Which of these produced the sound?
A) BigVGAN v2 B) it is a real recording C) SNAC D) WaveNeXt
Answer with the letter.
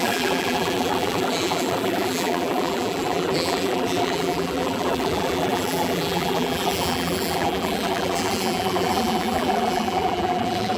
A